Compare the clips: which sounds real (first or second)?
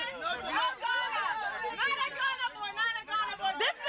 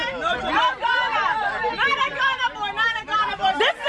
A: first